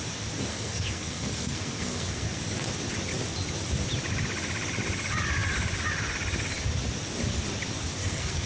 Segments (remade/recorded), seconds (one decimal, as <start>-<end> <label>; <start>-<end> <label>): 0.0-0.5 recorded; 0.5-2.4 remade; 2.4-8.0 recorded; 8.0-8.5 remade